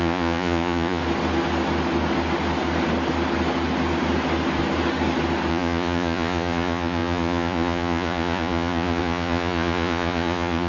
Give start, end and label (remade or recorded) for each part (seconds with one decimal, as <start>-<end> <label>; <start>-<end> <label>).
0.0-1.0 remade; 1.0-5.5 recorded; 5.5-10.7 remade